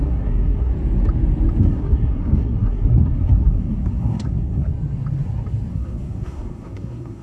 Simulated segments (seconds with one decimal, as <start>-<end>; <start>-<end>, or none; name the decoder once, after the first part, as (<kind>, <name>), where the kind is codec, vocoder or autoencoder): 0.0-0.7 (codec, SNAC); 1.6-4.7; 5.7-7.2